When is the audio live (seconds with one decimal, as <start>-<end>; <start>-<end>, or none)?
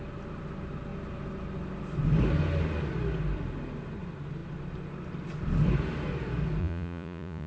0.0-6.6